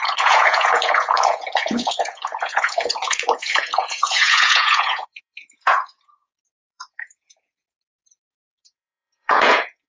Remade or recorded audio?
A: remade